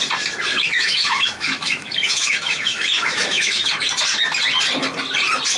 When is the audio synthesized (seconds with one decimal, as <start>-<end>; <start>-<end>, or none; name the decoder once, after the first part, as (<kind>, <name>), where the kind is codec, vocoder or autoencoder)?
0.5-3.9 (autoencoder, DAC-VAE)